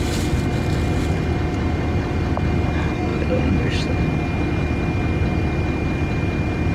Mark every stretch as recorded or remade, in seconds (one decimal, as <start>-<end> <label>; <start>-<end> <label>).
0.0-6.7 recorded